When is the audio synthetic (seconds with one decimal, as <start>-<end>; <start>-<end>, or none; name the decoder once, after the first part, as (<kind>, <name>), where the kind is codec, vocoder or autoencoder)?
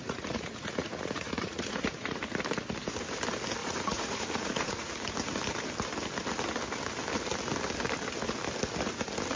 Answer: 0.0-2.2 (vocoder, Vocos); 3.6-4.9